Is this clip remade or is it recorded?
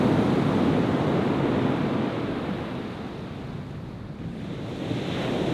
recorded